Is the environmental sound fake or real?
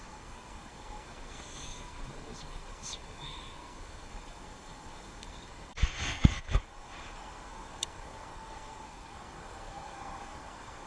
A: fake